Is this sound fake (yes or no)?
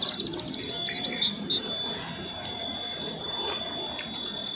no